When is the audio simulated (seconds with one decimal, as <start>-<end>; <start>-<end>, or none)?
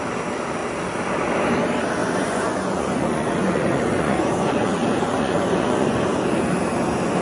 2.0-6.0